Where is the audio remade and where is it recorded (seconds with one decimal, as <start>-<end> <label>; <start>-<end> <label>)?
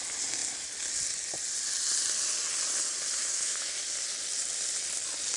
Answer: 0.0-3.2 recorded; 3.2-3.8 remade; 3.8-5.4 recorded